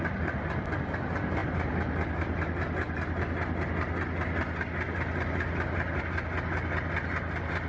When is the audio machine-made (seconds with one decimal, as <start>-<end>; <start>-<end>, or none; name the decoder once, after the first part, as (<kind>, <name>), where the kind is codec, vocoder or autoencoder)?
none

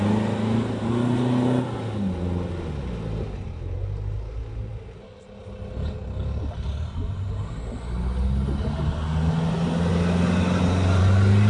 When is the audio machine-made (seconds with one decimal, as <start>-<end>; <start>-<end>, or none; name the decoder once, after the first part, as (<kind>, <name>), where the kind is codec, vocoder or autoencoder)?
none

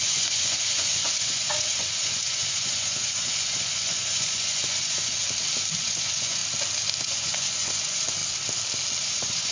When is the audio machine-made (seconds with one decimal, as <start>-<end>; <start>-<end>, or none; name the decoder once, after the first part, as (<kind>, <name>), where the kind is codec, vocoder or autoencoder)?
0.0-5.2 (vocoder, Vocos); 5.8-6.4; 7.0-8.2; 9.0-9.5

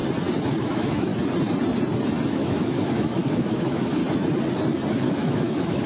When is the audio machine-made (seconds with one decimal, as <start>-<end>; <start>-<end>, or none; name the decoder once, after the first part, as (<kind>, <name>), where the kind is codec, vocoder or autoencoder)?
0.6-1.1 (autoencoder, DAC-VAE); 2.3-4.0; 4.9-5.9

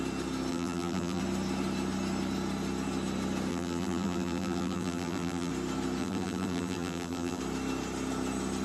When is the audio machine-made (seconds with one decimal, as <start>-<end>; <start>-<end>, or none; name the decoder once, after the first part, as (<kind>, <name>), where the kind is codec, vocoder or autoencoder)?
0.5-1.2 (vocoder, BigVGAN v2); 3.5-5.5; 6.0-7.4